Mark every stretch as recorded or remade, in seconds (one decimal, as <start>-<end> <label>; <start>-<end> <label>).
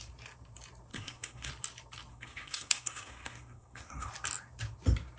0.0-0.9 recorded; 0.9-1.5 remade; 1.5-2.1 recorded; 2.1-4.1 remade; 4.1-5.2 recorded